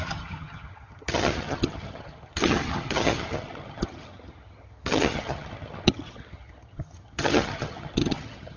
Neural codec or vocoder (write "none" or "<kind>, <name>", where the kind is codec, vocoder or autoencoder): vocoder, HiFi-GAN